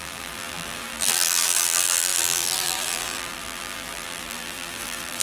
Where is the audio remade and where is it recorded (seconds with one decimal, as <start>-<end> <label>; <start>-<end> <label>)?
0.0-5.2 remade